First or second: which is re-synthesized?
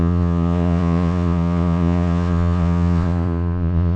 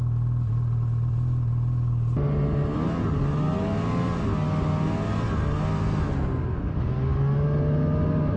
first